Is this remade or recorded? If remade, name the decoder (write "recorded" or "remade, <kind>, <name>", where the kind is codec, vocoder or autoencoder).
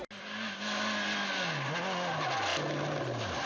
recorded